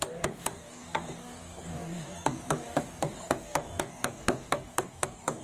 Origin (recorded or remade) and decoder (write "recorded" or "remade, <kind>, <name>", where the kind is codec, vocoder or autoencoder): remade, codec, DAC